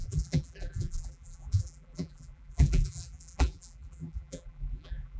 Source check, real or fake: fake